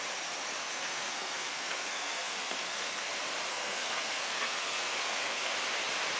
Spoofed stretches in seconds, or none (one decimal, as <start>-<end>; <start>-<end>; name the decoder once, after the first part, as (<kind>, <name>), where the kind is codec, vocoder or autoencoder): 0.6-3.1 (codec, SNAC); 3.5-5.5